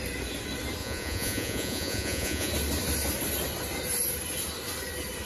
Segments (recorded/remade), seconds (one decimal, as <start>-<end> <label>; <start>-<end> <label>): 0.0-0.8 recorded; 0.8-2.5 remade; 2.5-5.3 recorded